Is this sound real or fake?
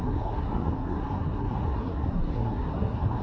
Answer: fake